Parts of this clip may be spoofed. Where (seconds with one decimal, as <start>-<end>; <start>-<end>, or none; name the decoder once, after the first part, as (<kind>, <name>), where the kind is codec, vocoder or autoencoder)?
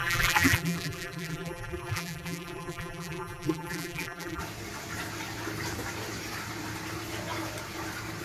0.0-4.4 (vocoder, BigVGAN v2)